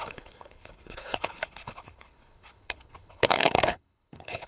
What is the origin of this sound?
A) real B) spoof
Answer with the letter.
B